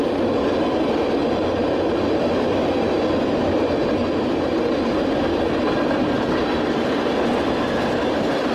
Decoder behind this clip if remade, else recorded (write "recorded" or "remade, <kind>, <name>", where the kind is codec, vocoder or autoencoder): recorded